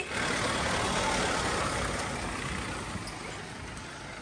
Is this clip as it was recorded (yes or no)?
yes